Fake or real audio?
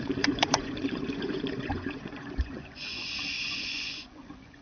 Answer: fake